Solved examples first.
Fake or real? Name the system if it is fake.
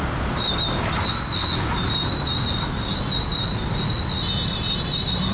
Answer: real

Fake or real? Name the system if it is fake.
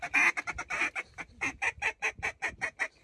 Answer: real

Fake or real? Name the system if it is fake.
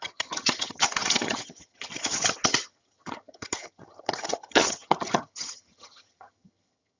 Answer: fake, vocoder, HiFi-GAN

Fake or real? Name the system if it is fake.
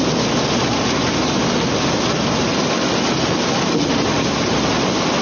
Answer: real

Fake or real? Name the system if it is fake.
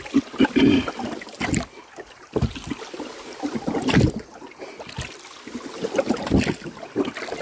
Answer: real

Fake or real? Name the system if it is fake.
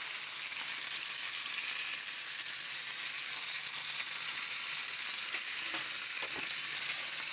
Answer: real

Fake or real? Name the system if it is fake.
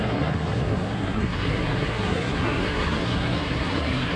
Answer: fake, codec, SNAC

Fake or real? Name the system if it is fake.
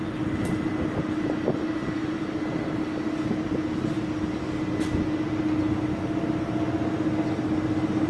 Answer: real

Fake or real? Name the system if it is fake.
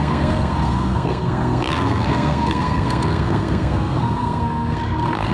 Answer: fake, codec, SNAC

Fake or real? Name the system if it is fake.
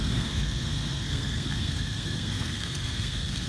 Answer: fake, codec, SNAC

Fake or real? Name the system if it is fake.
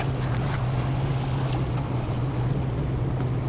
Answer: real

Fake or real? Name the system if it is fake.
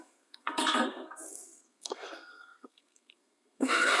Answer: fake, codec, SNAC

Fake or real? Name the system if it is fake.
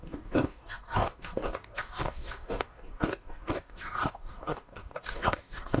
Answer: fake, codec, DAC